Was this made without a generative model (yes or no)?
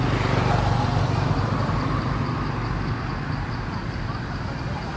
yes